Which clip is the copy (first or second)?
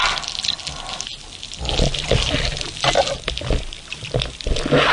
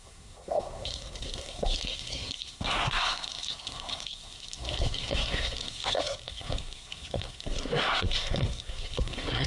second